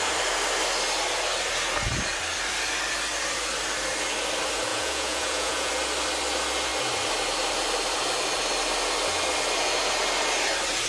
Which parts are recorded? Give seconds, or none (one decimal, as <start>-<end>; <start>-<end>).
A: 0.0-4.7; 5.7-10.9